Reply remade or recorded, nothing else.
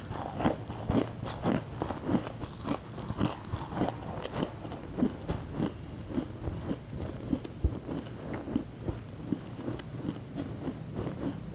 recorded